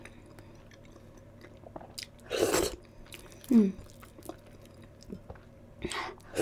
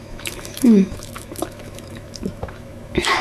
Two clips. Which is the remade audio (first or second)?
second